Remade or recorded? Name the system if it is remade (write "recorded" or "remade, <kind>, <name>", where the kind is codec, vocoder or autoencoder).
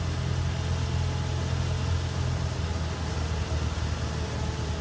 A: recorded